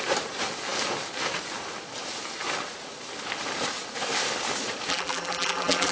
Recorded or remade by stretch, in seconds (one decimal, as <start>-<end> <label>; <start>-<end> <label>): 0.0-4.9 recorded; 4.9-5.9 remade